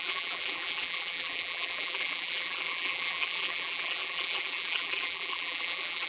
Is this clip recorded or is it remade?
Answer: remade